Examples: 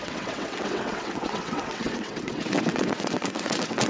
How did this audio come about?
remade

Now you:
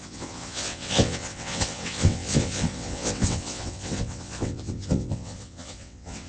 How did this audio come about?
remade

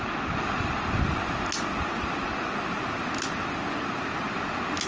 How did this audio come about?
recorded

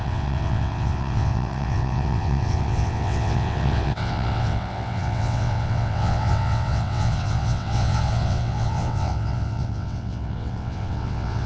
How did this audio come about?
remade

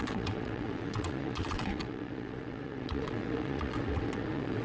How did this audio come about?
remade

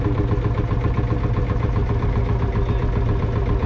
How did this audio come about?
recorded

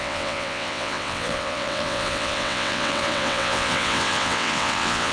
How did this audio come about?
remade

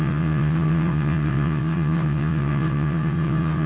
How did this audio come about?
remade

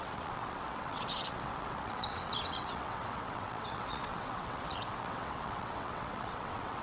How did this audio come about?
remade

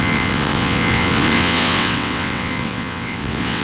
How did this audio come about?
remade